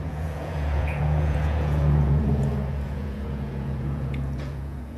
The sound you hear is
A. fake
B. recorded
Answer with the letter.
A